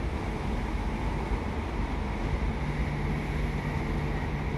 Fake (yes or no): no